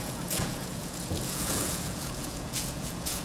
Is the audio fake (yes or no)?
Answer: yes